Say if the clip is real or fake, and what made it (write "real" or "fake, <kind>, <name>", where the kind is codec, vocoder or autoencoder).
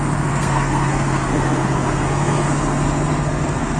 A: fake, codec, SNAC